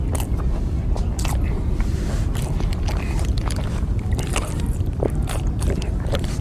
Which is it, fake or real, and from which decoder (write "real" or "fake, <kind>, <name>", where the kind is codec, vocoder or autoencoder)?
fake, vocoder, BigVGAN v2